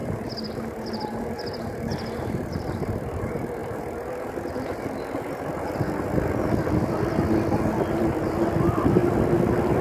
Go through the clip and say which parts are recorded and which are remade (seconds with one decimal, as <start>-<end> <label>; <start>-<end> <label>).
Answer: 0.0-3.6 remade; 3.6-8.1 recorded; 8.1-9.8 remade